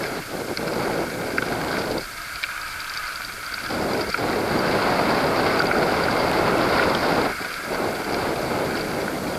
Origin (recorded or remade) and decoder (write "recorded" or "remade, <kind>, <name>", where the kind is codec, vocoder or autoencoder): recorded